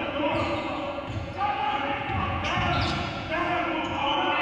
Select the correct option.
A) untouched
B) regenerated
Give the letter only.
B